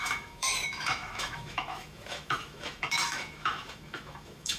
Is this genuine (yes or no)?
no